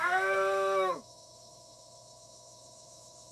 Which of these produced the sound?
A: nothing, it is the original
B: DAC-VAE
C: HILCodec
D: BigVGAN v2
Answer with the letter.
B